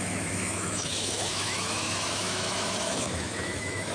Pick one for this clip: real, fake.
fake